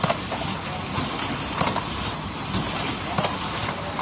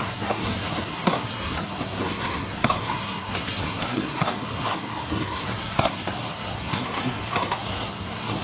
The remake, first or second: second